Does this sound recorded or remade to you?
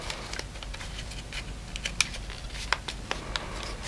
recorded